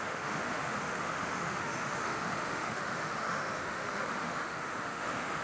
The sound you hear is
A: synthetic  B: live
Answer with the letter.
A